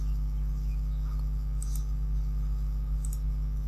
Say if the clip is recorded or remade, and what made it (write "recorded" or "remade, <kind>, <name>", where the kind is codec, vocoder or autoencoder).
recorded